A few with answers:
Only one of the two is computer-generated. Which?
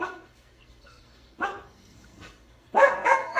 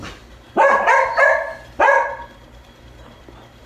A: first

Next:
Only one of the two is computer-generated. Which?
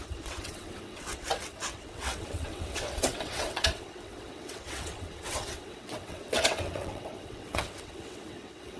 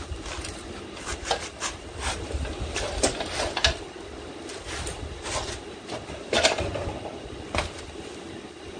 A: first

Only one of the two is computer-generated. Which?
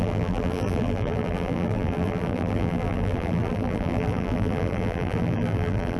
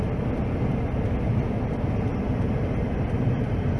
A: first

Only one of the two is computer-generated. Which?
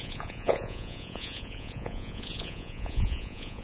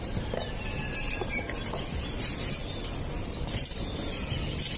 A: first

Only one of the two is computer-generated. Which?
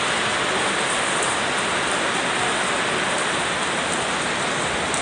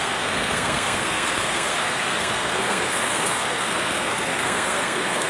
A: second